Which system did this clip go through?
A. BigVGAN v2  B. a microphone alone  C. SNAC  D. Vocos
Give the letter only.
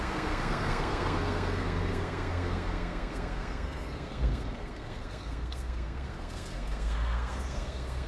C